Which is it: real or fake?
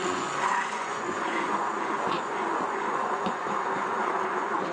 fake